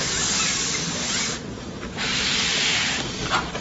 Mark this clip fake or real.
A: fake